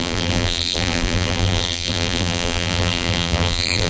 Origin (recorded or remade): remade